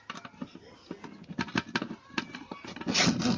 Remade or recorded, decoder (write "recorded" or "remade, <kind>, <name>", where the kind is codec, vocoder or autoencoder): recorded